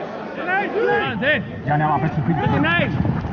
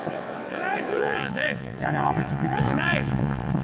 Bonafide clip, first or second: first